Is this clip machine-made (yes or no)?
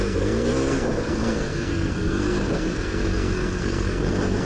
yes